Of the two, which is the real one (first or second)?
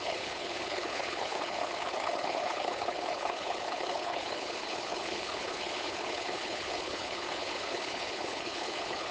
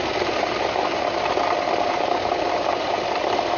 second